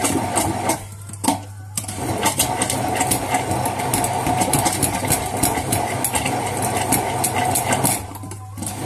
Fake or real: real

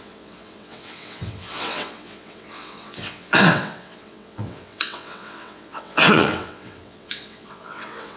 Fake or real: fake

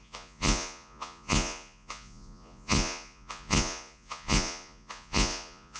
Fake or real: fake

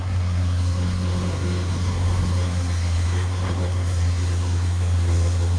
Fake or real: fake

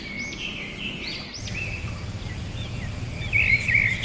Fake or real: real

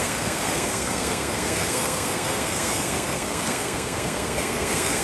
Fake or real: fake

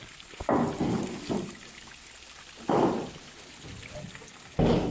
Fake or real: real